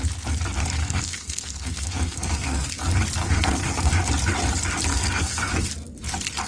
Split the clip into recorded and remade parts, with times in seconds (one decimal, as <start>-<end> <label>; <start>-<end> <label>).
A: 0.0-0.8 recorded; 0.8-2.7 remade; 2.7-3.2 recorded; 3.2-3.9 remade; 3.9-4.9 recorded; 4.9-5.7 remade; 5.7-6.5 recorded